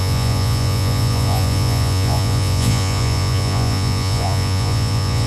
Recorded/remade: remade